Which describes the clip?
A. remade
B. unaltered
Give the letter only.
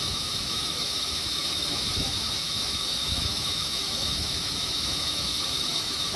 A